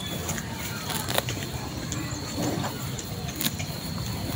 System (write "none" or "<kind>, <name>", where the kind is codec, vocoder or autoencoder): none